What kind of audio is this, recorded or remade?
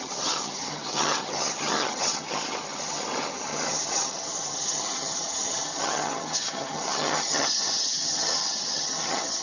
remade